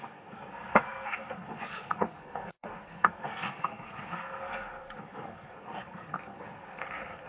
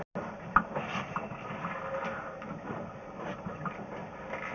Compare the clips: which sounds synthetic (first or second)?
first